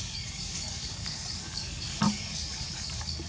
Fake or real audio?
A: fake